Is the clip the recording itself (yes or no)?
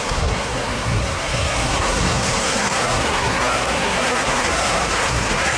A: no